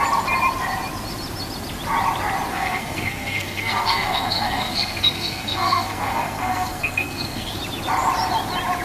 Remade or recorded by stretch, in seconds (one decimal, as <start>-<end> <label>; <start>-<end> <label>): 0.0-2.5 recorded; 2.5-7.6 remade; 7.6-8.8 recorded